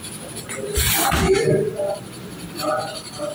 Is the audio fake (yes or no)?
no